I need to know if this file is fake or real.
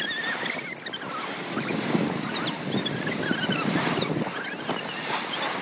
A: real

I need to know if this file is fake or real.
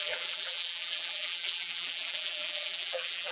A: fake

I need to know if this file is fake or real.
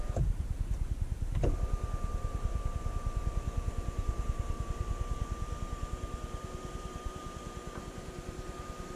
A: fake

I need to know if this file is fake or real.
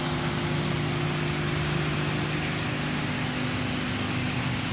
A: real